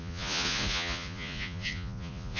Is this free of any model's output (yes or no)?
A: no